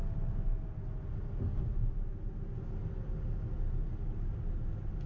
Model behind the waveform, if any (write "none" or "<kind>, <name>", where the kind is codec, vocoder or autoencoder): none